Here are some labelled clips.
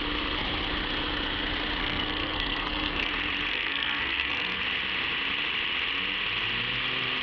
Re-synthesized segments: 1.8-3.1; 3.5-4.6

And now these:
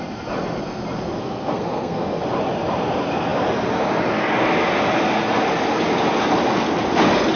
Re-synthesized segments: 1.2-2.2

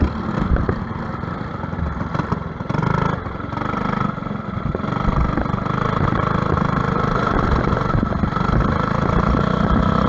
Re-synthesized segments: none

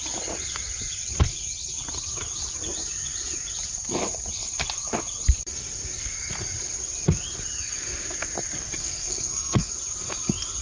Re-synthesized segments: 8.8-9.7

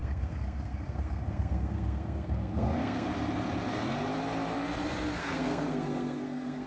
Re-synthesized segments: 0.0-3.1; 5.2-6.7